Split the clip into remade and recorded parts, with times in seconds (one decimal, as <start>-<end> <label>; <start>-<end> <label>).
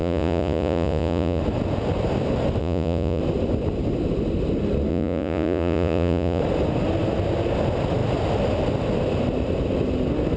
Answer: 0.0-1.4 remade; 1.4-2.6 recorded; 2.6-3.2 remade; 3.2-4.9 recorded; 4.9-6.4 remade; 6.4-10.4 recorded